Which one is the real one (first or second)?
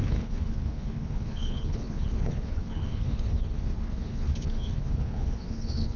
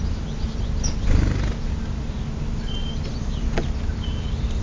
second